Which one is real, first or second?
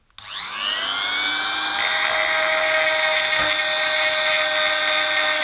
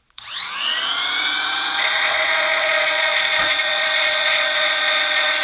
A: first